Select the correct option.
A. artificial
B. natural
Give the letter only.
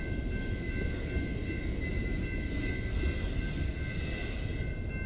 B